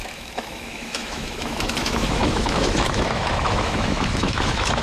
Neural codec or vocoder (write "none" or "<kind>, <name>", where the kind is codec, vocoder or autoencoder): autoencoder, DAC-VAE